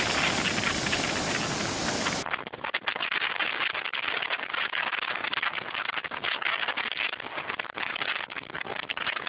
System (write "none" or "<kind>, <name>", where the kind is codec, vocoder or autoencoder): none